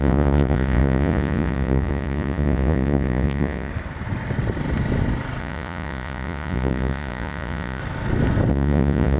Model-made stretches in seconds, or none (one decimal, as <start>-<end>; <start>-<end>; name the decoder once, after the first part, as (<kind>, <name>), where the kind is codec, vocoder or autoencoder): 0.0-3.7 (vocoder, Vocos); 5.4-7.8; 8.5-9.2